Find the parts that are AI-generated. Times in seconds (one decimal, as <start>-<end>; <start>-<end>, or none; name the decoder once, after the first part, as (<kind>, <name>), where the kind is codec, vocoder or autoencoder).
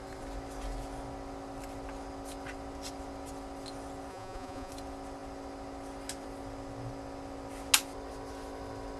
4.1-4.7 (vocoder, Vocos)